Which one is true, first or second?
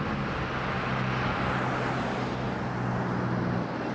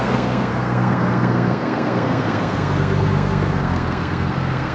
first